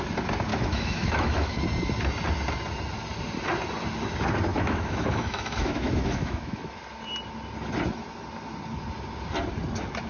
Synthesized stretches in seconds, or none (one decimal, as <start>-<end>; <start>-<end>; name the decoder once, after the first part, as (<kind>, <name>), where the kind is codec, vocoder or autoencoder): 0.5-1.6 (autoencoder, DAC-VAE); 4.5-6.8